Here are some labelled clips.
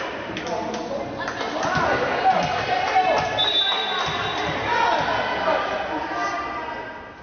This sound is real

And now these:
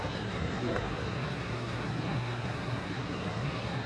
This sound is fake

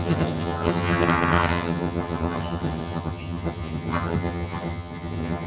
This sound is fake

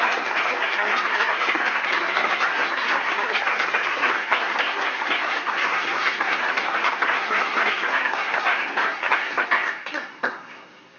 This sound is fake